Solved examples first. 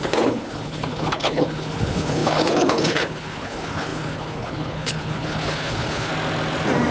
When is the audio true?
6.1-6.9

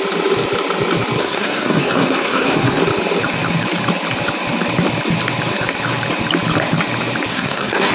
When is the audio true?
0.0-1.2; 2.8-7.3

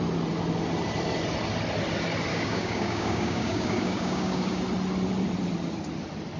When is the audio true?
0.0-2.3; 4.6-6.4

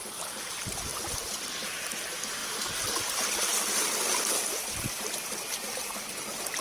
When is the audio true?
0.9-1.9; 2.4-6.6